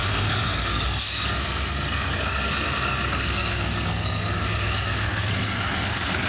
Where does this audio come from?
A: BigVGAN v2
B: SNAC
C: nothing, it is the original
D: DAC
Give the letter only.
B